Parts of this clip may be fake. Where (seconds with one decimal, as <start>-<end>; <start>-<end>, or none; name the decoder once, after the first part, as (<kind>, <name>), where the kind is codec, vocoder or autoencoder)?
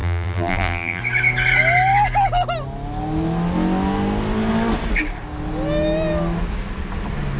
0.0-1.0 (vocoder, BigVGAN v2)